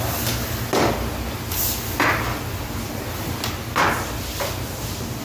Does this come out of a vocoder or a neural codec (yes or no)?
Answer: no